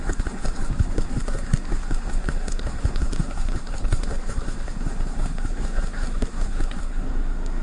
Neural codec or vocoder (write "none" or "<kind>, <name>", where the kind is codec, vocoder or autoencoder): codec, SNAC